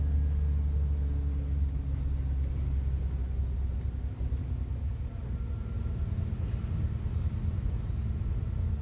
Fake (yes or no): no